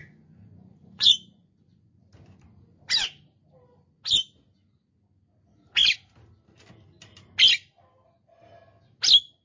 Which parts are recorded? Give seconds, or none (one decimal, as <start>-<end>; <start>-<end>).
2.1-9.4